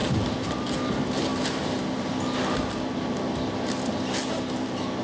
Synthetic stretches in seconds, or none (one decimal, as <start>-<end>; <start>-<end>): none